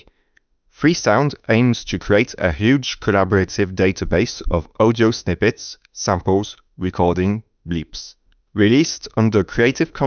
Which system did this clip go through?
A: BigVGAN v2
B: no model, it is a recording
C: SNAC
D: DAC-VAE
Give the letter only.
D